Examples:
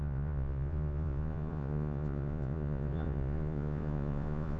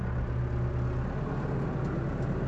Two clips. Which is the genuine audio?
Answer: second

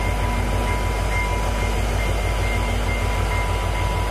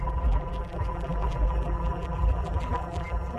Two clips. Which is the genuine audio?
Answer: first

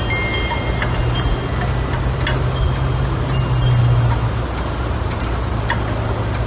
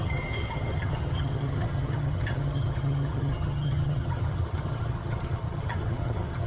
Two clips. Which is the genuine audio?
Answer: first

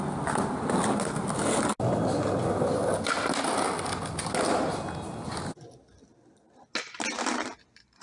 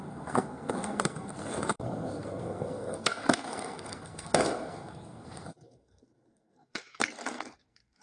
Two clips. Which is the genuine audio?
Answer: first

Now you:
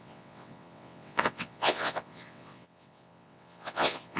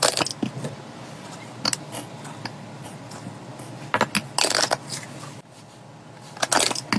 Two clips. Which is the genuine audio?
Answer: second